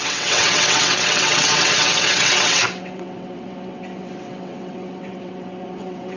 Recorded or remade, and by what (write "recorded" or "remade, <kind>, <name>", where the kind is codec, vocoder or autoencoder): remade, vocoder, WaveNeXt